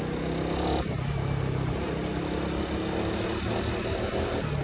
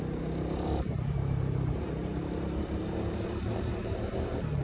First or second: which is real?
first